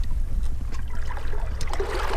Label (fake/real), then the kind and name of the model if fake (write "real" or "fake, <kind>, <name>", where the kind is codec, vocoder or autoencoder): real